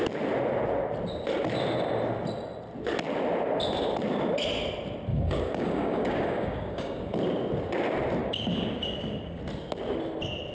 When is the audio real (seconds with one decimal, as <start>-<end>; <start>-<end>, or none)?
0.0-5.1; 7.2-8.2; 9.4-10.5